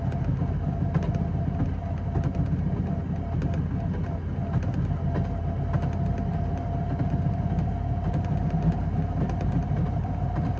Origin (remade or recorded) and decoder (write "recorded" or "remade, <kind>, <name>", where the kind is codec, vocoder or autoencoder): recorded